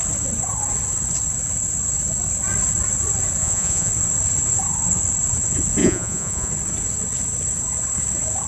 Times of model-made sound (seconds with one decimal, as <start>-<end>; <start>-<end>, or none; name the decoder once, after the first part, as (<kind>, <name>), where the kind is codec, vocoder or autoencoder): 3.4-3.9 (vocoder, Vocos); 5.8-6.5